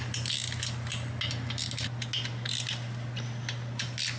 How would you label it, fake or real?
real